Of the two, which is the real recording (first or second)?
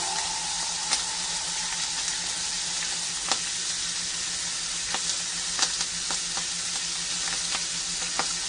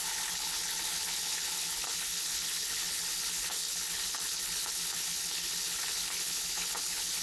first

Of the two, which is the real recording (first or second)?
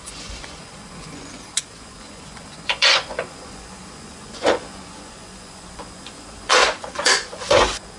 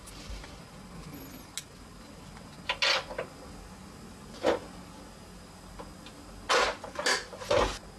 second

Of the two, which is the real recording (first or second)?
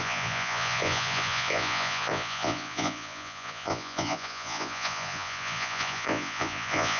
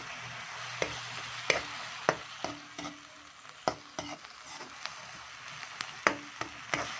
second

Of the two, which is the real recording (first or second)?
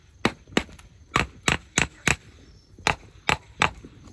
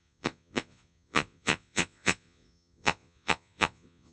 first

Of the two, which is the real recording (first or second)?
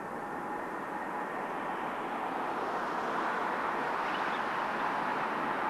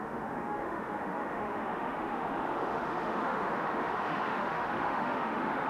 first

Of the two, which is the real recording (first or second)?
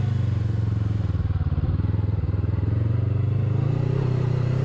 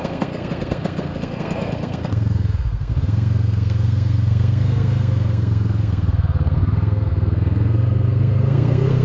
first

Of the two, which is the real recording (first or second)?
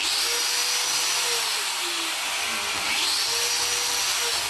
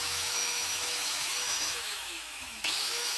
first